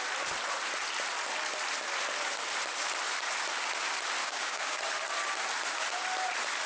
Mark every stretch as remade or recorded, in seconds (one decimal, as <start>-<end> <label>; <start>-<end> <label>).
0.0-4.2 recorded; 4.2-4.8 remade; 4.8-6.7 recorded